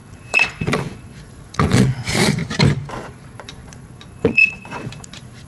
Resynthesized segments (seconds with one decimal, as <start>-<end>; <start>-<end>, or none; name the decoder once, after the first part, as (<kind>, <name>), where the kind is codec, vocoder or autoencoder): 0.0-2.4 (vocoder, Vocos); 2.9-5.5